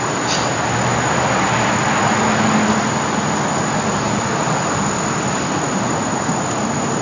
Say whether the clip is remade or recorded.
recorded